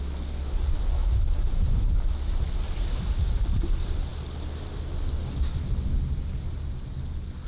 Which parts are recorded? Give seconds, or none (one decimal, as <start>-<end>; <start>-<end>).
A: 0.0-7.5